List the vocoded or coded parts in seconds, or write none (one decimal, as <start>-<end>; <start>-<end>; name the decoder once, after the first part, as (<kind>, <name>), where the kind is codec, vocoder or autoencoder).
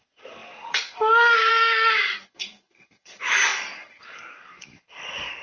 0.0-5.4 (codec, DAC)